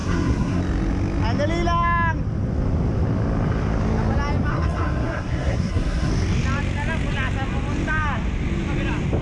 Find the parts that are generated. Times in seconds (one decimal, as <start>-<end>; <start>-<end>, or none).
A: 0.0-0.6; 4.5-6.1